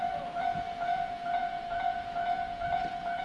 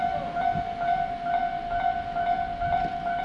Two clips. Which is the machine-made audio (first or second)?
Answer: first